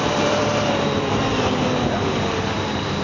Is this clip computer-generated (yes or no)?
yes